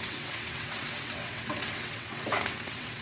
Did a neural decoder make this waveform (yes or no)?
yes